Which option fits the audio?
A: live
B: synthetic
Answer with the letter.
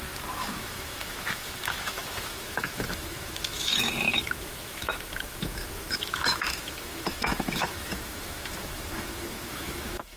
B